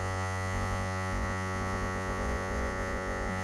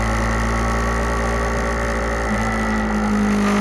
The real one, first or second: second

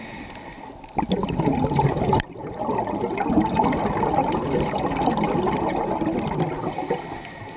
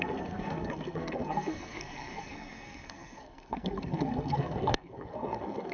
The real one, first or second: first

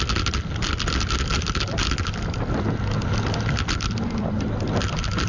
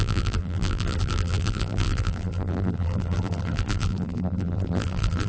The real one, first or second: first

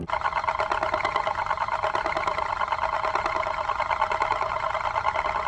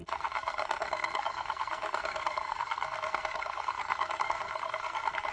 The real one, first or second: first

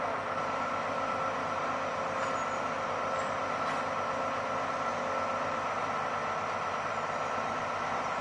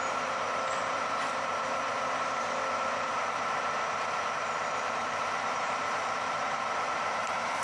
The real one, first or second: first